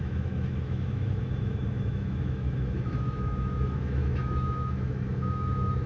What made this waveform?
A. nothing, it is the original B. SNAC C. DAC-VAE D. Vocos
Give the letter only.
C